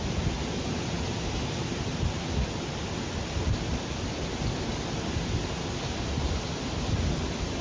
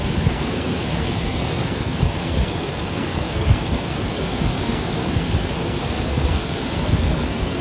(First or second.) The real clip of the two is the first